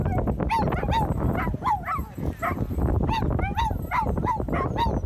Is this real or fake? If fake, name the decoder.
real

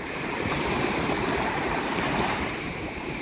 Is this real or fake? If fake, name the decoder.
fake, vocoder, BigVGAN v2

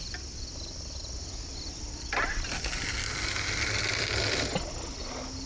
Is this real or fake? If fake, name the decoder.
real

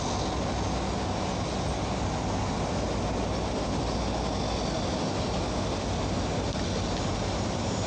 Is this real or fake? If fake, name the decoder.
real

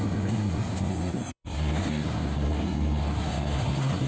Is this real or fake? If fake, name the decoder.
fake, codec, SNAC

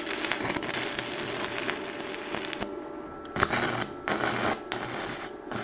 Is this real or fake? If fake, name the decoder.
real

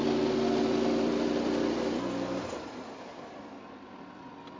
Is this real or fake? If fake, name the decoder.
real